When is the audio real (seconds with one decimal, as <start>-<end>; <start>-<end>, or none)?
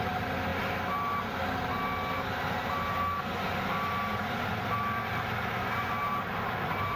0.0-7.0